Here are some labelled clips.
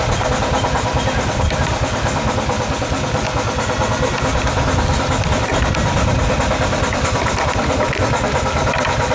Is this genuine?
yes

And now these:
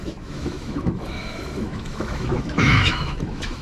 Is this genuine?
no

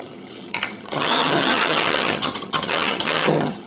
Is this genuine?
no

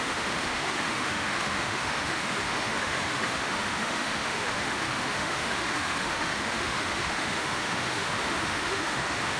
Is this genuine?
no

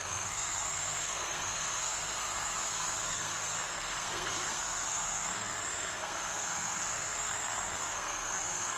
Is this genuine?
no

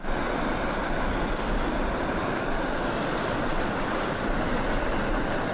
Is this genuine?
yes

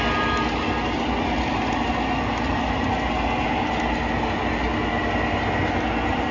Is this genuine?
yes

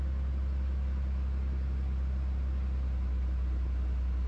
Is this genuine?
yes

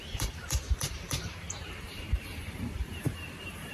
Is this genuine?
no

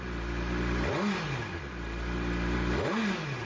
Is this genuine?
yes